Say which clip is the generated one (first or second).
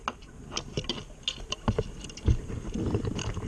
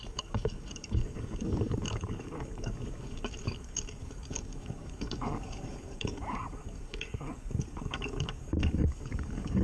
second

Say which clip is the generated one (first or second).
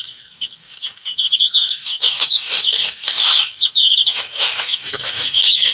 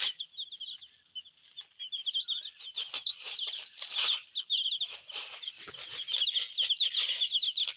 first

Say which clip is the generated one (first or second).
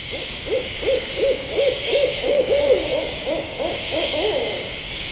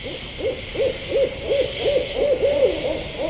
first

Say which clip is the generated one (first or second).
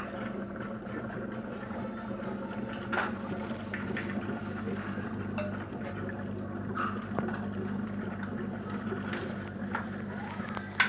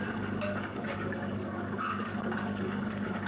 second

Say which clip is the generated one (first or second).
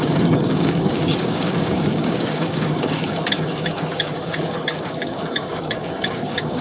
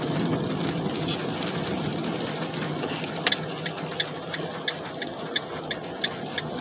first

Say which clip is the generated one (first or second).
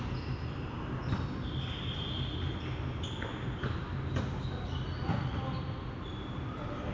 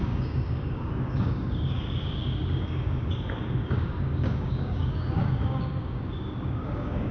second